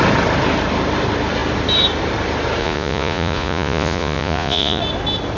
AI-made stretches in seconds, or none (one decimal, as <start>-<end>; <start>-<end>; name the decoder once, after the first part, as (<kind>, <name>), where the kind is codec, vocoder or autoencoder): 2.6-4.8 (vocoder, Vocos)